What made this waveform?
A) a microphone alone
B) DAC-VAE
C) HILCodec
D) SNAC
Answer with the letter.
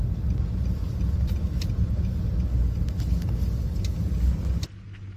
A